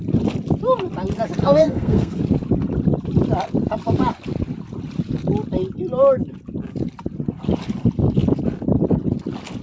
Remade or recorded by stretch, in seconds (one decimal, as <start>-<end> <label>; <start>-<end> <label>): 0.0-1.4 recorded; 1.4-2.2 remade; 2.2-9.6 recorded